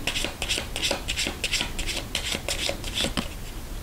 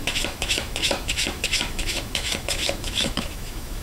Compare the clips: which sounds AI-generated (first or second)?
second